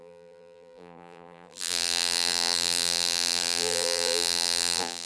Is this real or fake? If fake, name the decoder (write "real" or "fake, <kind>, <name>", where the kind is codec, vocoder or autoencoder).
fake, vocoder, BigVGAN v2